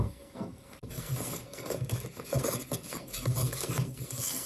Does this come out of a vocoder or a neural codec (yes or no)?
yes